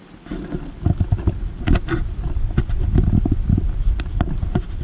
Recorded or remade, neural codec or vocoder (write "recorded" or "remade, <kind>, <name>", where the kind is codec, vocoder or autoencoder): recorded